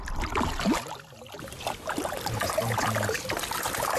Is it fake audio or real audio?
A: real